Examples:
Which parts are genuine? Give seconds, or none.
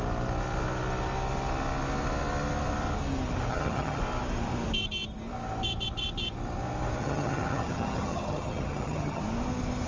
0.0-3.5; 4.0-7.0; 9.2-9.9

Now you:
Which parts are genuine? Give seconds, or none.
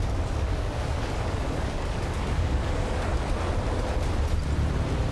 3.1-5.1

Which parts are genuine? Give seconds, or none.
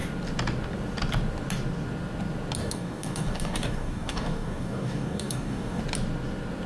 0.0-2.6; 5.8-6.7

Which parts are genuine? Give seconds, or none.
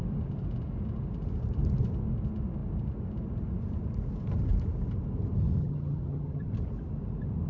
0.0-5.6; 6.5-7.5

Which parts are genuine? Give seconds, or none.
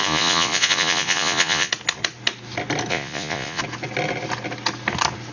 1.7-2.9; 3.6-5.3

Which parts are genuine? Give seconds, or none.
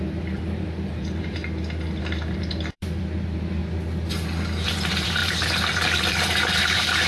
1.4-2.0; 3.6-4.6